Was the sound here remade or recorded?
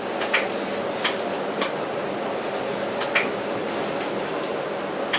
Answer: recorded